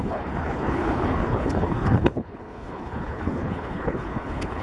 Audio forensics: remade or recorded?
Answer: remade